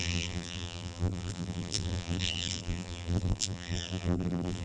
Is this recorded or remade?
remade